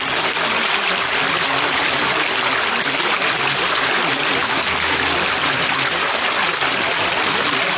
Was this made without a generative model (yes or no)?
yes